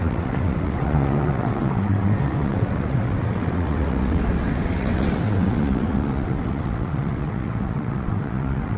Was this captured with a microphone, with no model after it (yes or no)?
no